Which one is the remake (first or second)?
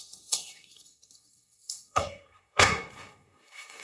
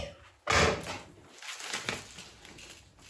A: first